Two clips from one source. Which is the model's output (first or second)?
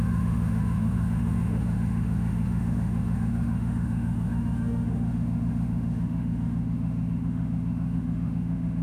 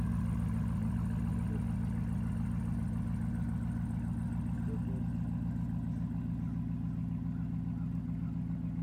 first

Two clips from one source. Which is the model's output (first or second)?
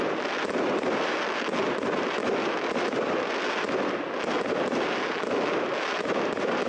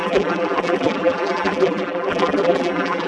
second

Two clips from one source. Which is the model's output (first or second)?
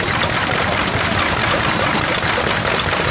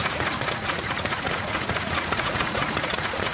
second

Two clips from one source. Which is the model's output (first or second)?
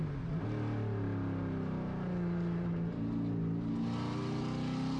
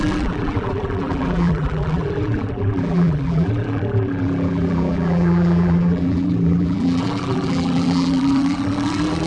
second